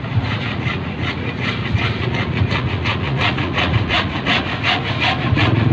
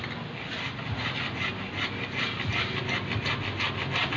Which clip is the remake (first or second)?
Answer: first